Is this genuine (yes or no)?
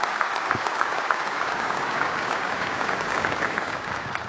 no